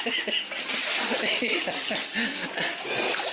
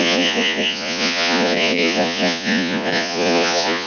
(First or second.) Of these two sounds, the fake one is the second